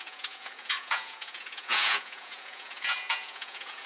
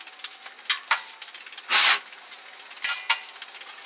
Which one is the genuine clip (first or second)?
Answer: second